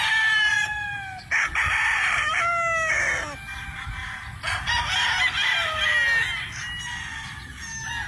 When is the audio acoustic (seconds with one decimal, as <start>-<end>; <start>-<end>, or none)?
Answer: 0.0-8.1